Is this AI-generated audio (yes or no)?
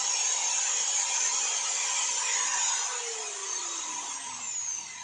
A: no